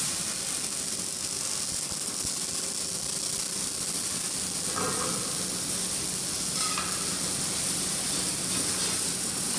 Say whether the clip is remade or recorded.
recorded